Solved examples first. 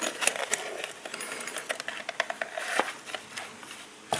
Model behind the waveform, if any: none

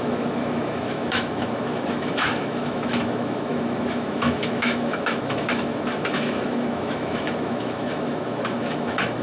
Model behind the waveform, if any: autoencoder, DAC-VAE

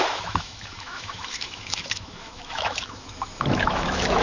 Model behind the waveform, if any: autoencoder, DAC-VAE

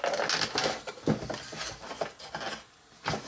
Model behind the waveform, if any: none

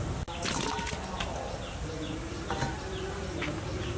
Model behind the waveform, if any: none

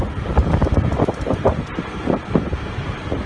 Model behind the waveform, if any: none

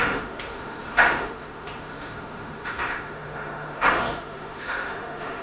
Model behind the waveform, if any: autoencoder, DAC-VAE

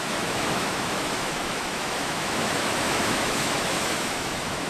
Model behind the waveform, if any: autoencoder, DAC-VAE